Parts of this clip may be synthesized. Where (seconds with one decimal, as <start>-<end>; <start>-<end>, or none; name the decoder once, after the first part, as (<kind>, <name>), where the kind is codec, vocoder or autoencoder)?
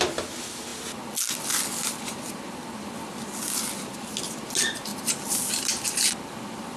none